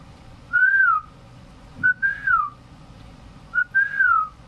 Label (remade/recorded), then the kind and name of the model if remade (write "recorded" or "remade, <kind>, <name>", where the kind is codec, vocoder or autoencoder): remade, vocoder, Vocos